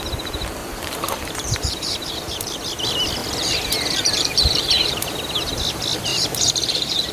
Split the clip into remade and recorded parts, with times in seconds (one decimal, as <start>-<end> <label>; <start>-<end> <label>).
0.0-0.6 recorded; 0.6-2.6 remade; 2.6-3.2 recorded; 3.2-5.5 remade; 5.5-6.1 recorded; 6.1-7.1 remade